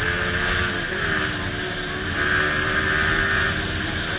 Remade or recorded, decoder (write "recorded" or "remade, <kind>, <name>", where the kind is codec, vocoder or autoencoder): recorded